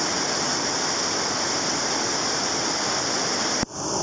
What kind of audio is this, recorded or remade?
recorded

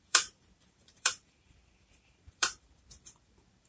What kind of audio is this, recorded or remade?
remade